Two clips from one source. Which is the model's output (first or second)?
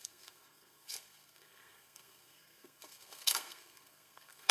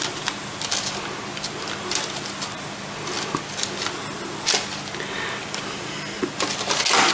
first